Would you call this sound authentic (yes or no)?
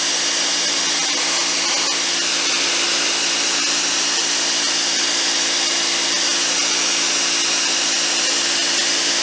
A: yes